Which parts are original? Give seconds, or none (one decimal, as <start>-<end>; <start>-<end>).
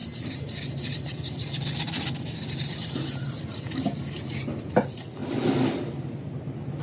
0.0-6.8